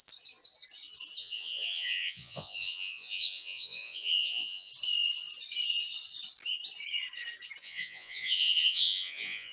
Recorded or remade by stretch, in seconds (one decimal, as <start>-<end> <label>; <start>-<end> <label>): 0.0-1.2 recorded; 1.2-4.7 remade; 4.7-7.6 recorded; 7.6-9.5 remade